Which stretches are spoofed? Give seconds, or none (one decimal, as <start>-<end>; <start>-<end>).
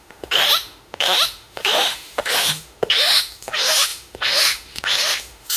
0.0-5.6